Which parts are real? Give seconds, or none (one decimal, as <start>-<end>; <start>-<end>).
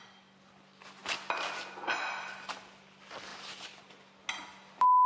0.0-3.3; 3.9-5.1